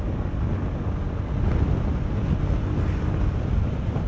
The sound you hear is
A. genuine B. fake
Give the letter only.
A